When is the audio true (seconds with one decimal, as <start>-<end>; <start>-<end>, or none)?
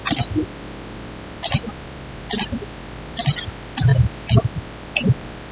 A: 0.0-5.5